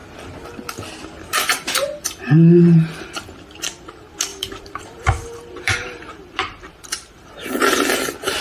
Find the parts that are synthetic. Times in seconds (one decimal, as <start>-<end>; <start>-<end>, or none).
4.3-7.5